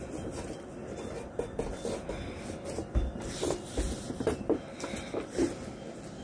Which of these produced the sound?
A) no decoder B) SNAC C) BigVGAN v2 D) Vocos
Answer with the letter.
A